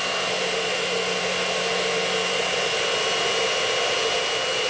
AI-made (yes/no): no